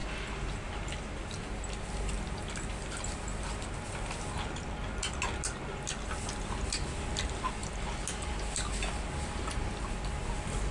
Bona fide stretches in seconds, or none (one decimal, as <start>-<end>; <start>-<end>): 0.0-10.7